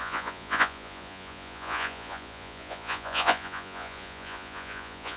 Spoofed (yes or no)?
yes